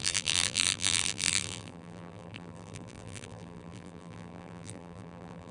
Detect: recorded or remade remade